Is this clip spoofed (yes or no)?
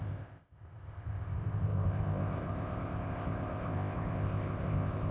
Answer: yes